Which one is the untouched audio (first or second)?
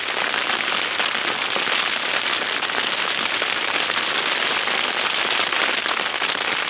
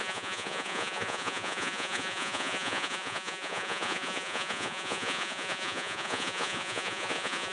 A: first